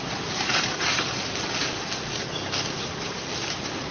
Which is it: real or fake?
real